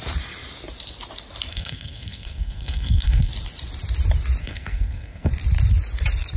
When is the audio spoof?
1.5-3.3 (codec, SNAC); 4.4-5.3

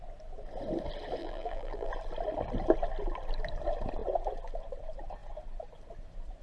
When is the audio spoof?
1.2-1.9 (vocoder, BigVGAN v2)